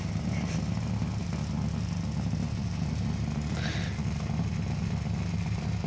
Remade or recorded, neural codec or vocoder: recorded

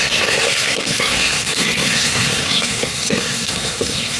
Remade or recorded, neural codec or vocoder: remade, codec, SNAC